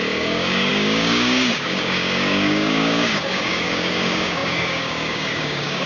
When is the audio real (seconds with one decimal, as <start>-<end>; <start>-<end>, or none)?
none